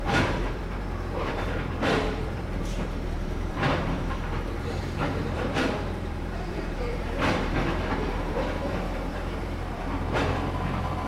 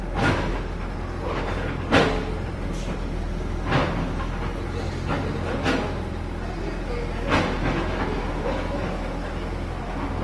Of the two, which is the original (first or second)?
second